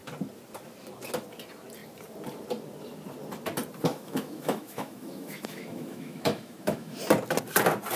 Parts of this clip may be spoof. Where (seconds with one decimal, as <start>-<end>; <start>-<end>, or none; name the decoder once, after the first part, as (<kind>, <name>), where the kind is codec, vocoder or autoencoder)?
3.9-7.0 (autoencoder, DAC-VAE)